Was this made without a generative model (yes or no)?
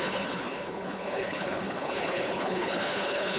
no